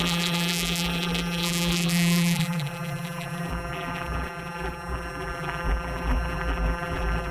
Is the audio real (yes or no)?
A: no